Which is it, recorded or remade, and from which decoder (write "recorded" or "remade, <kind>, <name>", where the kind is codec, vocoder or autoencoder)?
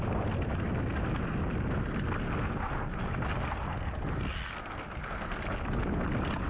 recorded